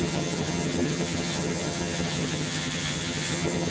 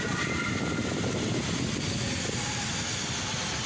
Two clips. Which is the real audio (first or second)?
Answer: second